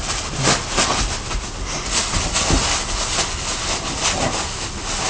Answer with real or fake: real